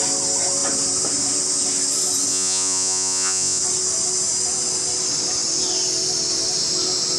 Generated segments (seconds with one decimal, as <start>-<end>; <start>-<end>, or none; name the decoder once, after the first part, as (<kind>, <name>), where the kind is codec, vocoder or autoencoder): 2.3-3.6 (vocoder, Vocos)